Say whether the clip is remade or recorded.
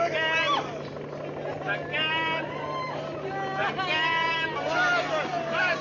recorded